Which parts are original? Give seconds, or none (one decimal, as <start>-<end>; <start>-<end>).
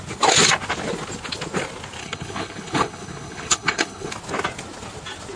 0.0-2.0; 4.1-5.4